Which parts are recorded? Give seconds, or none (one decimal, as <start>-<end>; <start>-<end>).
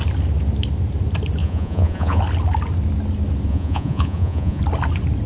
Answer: 0.0-1.4; 2.2-3.5; 4.6-5.3